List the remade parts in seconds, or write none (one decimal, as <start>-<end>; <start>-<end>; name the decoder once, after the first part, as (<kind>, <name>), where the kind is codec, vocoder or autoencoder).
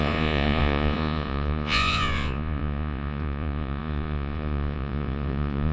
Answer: 0.0-5.7 (vocoder, Vocos)